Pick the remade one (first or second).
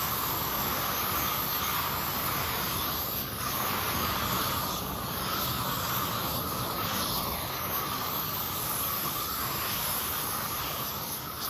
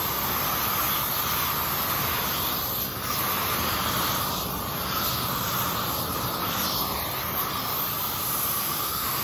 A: first